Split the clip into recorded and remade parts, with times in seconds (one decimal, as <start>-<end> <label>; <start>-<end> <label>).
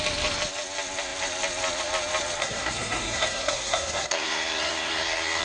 0.0-2.4 recorded; 2.4-5.4 remade